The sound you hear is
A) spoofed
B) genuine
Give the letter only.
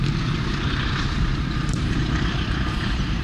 A